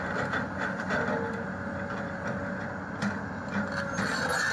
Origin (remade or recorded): recorded